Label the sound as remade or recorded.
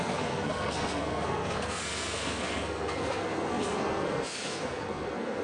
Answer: remade